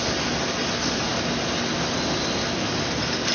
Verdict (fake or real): real